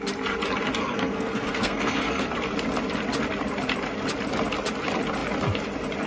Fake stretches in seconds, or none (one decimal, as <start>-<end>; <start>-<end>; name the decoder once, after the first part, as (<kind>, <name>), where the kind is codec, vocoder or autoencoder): 0.8-2.3 (codec, SNAC)